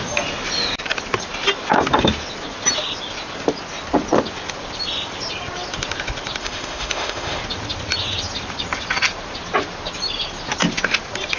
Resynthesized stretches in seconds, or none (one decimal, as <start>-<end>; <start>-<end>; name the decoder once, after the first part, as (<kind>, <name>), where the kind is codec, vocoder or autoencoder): 6.4-7.4 (autoencoder, DAC-VAE)